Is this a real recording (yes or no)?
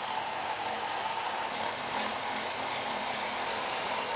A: no